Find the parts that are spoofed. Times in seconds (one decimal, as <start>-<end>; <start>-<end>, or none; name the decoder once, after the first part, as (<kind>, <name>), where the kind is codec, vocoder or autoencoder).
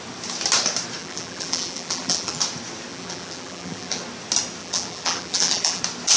1.0-2.4 (vocoder, BigVGAN v2); 2.9-4.0; 4.6-5.8